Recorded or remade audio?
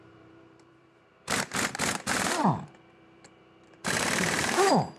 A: remade